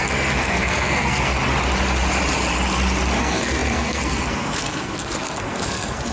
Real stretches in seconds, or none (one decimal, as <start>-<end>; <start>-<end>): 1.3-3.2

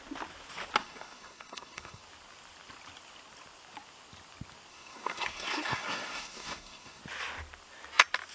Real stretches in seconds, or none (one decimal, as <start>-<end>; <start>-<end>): 0.0-0.8; 2.0-4.7; 7.0-8.3

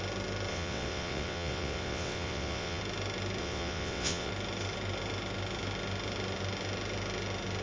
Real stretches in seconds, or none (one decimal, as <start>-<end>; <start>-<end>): 0.0-0.5; 2.8-3.4; 4.3-7.6

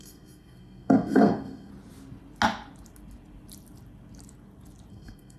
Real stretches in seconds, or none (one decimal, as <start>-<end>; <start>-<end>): 1.7-4.9